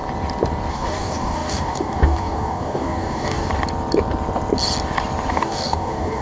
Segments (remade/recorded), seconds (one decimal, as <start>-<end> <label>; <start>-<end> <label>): 0.0-0.7 recorded; 0.7-3.5 remade; 3.5-5.3 recorded; 5.3-6.2 remade